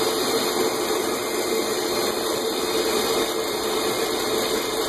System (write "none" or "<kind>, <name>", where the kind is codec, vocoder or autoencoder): none